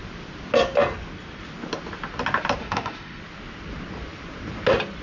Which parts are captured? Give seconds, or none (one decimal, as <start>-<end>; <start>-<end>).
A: 0.0-2.6; 3.2-5.0